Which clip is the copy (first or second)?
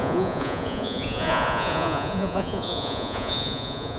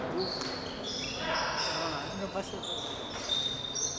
first